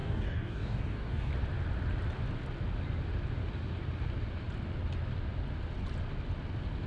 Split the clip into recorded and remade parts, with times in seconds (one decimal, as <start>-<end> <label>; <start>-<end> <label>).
0.0-1.3 remade; 1.3-6.9 recorded